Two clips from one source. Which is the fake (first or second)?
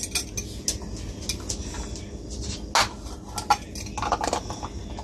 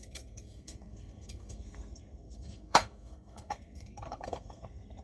second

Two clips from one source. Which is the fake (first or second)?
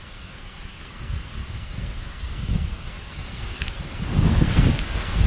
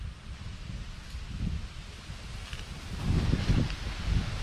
first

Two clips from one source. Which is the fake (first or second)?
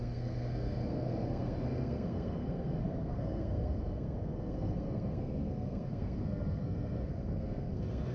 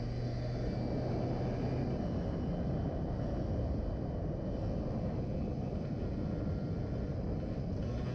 first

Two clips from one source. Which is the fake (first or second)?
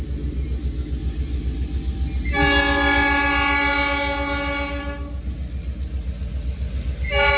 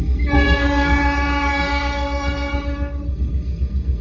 second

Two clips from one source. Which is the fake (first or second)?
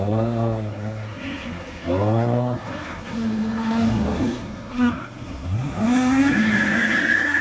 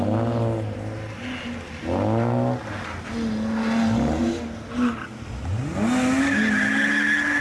first